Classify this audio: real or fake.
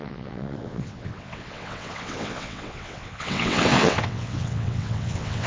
fake